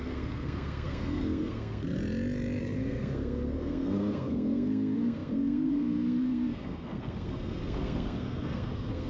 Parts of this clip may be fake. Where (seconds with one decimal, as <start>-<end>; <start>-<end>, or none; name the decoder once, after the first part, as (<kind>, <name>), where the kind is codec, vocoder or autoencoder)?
0.0-2.0 (codec, SNAC); 2.6-9.1